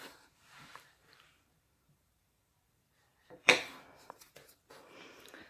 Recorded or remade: remade